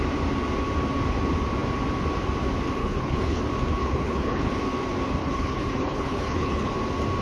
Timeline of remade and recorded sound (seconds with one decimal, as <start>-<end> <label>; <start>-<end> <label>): 0.0-2.8 recorded; 2.8-3.4 remade; 3.4-3.8 recorded; 3.8-4.5 remade; 4.5-5.2 recorded; 5.2-6.7 remade; 6.7-7.2 recorded